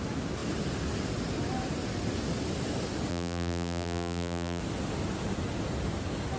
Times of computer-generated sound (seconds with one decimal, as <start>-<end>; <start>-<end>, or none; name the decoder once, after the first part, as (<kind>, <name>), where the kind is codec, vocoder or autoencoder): 3.1-4.6 (vocoder, BigVGAN v2)